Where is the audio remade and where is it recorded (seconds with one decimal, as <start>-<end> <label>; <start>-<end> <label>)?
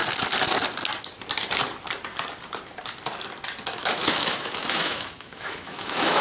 0.0-3.7 recorded; 3.7-6.2 remade